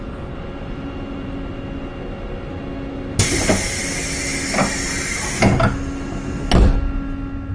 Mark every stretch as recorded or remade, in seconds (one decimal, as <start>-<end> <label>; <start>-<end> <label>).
0.0-7.5 recorded